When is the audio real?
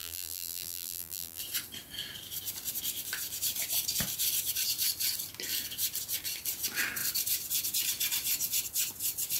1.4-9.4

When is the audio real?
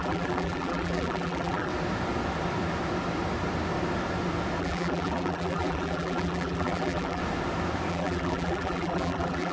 1.7-4.6; 7.2-7.9